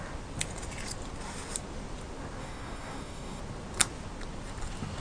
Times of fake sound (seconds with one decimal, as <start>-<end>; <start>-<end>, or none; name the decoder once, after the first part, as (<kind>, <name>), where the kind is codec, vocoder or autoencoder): 2.4-3.4 (codec, DAC)